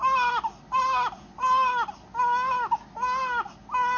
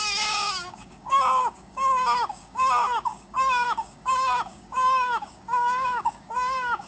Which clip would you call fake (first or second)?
second